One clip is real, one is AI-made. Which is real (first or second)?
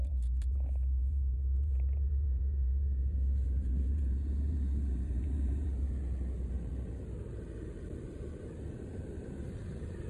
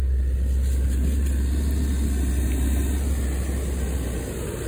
second